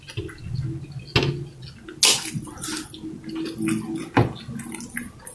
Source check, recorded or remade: recorded